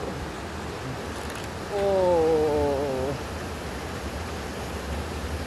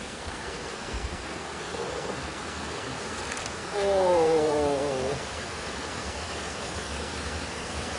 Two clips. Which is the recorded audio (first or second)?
first